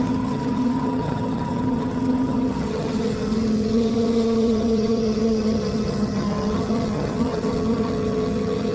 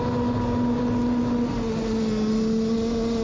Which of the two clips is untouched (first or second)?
second